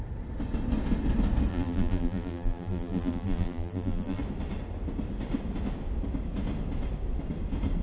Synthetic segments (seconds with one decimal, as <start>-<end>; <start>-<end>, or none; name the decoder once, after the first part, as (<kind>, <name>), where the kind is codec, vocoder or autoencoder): 1.5-4.2 (vocoder, BigVGAN v2)